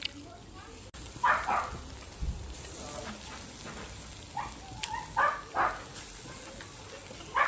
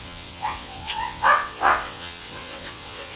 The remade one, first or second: second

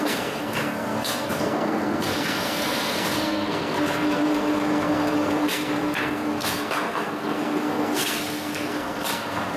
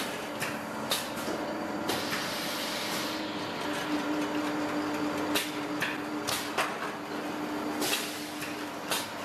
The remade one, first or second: first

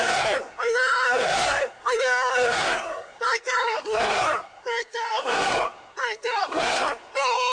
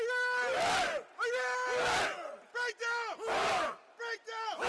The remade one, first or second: first